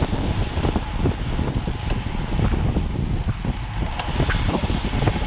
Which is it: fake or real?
real